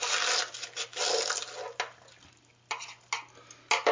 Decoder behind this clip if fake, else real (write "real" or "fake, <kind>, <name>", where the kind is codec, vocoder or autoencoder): real